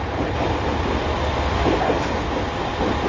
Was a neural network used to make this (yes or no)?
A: no